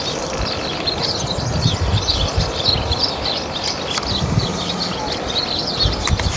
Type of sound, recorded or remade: remade